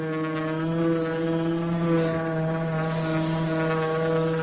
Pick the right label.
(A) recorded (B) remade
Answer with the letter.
A